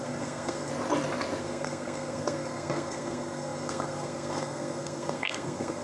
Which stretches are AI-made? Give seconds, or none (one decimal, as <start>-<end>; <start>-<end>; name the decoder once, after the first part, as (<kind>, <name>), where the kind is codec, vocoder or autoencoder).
0.0-0.7 (codec, SNAC); 1.4-5.8